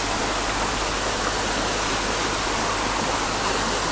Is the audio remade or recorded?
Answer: recorded